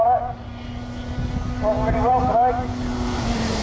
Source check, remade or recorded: recorded